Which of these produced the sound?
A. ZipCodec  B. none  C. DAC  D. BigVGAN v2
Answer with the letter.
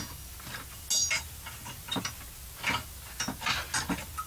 B